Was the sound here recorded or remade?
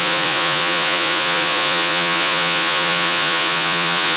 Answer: remade